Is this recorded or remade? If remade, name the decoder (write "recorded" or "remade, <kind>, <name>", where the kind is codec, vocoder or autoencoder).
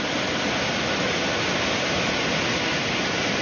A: recorded